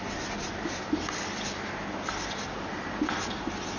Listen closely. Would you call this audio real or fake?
real